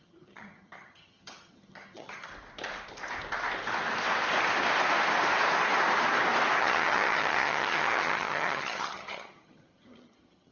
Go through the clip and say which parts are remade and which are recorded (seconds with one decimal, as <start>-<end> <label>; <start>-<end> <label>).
0.0-2.3 remade; 2.3-6.6 recorded; 6.6-10.5 remade